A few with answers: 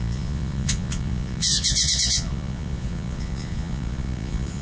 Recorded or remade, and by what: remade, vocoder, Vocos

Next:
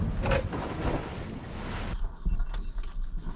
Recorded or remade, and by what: recorded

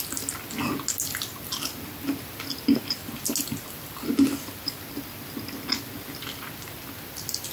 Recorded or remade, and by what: recorded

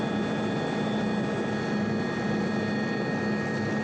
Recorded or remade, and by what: recorded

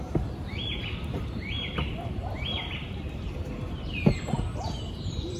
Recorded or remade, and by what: remade, vocoder, BigVGAN v2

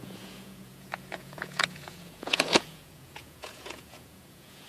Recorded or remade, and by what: remade, vocoder, Vocos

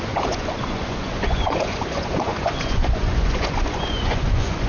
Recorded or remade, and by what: remade, vocoder, Vocos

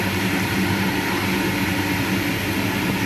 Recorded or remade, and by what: recorded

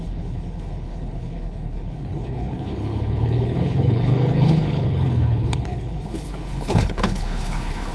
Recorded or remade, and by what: remade, codec, HILCodec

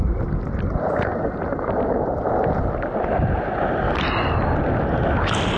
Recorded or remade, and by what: recorded